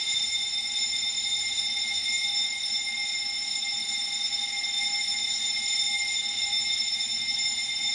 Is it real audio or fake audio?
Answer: real